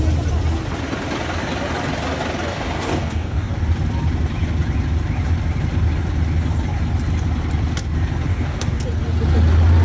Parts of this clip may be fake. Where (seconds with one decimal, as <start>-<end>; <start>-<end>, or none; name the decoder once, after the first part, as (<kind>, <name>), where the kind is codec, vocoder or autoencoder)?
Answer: 2.5-3.5 (codec, DAC); 8.3-8.8